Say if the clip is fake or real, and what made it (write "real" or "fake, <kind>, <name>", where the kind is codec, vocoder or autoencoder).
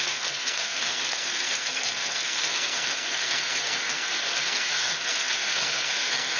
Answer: fake, codec, SNAC